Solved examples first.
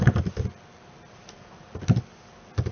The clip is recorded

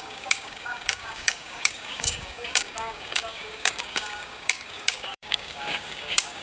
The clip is remade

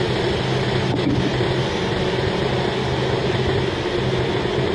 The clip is recorded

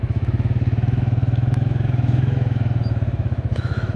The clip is remade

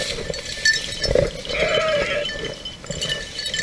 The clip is recorded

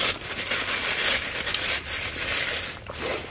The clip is recorded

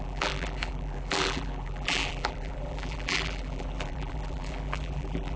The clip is remade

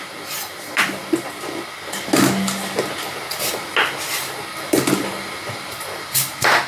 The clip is recorded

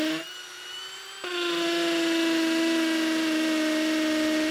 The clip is recorded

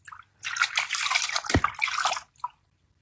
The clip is recorded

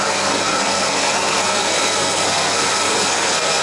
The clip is remade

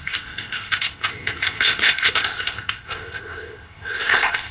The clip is remade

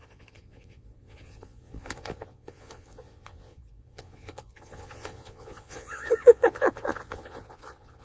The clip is remade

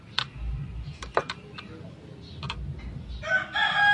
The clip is recorded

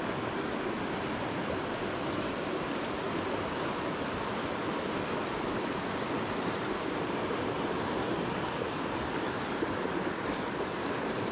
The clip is recorded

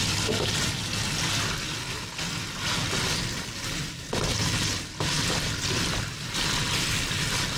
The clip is recorded